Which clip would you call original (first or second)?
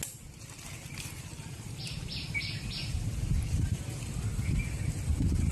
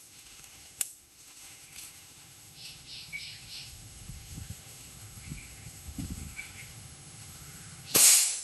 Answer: first